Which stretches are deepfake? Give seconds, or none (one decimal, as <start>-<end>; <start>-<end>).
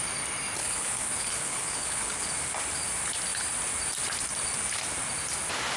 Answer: 0.6-2.3